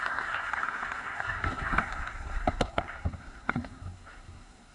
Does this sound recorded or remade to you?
remade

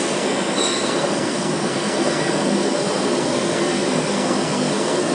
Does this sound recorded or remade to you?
remade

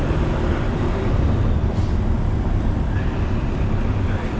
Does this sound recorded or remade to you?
recorded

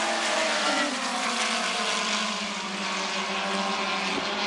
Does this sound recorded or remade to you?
recorded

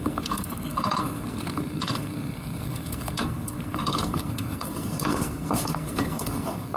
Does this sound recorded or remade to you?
remade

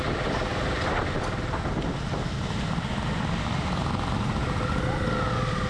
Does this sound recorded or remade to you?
recorded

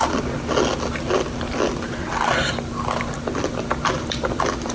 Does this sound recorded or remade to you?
recorded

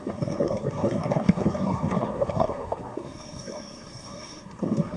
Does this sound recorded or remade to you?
remade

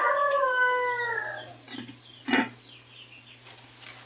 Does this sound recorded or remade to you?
recorded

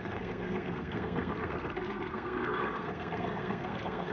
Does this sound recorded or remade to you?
remade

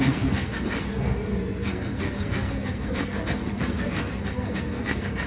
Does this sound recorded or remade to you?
remade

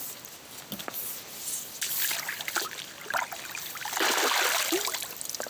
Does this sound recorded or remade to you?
recorded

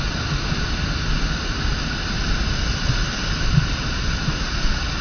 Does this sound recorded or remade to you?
recorded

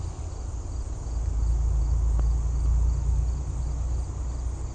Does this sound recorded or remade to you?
recorded